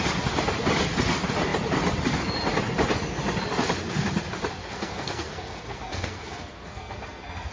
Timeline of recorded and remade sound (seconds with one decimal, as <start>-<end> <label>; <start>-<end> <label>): 0.0-4.6 recorded; 4.6-7.5 remade